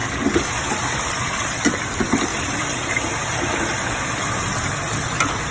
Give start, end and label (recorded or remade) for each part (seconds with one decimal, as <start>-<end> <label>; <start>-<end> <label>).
0.0-1.8 remade; 1.8-2.3 recorded; 2.3-3.9 remade; 3.9-5.5 recorded